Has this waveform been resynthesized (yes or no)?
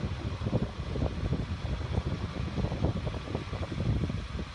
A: no